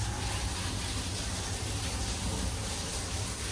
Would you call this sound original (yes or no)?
yes